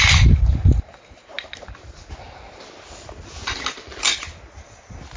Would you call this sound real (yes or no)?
yes